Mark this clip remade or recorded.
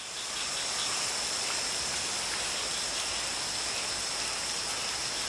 recorded